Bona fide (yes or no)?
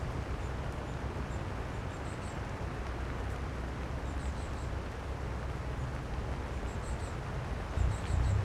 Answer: yes